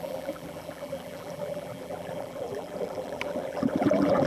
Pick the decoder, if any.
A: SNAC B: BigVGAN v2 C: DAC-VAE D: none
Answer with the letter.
B